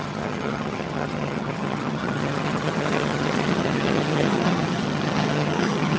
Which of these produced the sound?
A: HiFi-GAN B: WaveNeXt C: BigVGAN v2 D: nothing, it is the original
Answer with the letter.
A